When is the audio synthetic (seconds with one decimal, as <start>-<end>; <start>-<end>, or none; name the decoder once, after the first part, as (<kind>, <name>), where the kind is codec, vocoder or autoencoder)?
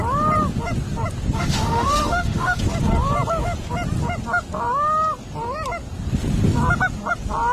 1.4-2.6 (autoencoder, DAC-VAE)